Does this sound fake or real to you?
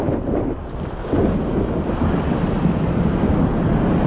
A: real